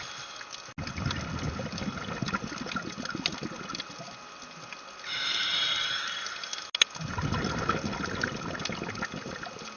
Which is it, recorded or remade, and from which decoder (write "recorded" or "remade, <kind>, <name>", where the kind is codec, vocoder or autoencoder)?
recorded